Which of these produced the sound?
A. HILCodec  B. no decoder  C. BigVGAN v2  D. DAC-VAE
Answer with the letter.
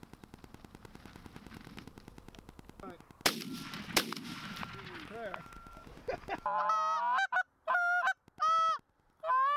B